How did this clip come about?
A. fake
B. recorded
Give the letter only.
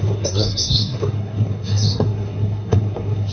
A